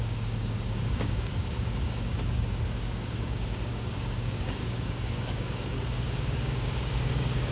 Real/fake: fake